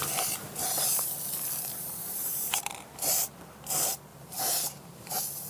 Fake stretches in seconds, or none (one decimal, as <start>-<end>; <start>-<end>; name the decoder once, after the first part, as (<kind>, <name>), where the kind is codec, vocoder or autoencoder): 2.0-2.7 (vocoder, BigVGAN v2); 4.1-5.1